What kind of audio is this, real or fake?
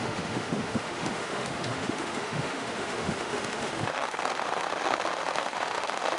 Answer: fake